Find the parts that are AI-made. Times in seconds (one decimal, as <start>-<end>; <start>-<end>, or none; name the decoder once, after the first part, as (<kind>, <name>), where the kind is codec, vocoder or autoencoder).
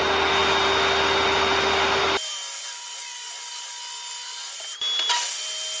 none